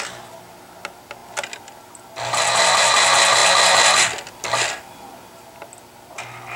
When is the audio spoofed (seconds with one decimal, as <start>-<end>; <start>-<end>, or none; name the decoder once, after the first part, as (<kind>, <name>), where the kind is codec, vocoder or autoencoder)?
none